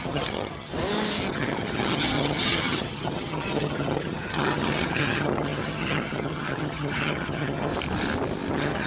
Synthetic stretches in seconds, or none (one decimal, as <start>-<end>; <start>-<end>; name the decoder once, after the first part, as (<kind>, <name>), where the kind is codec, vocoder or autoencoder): 0.0-0.7 (vocoder, HiFi-GAN); 1.3-7.7; 8.5-8.9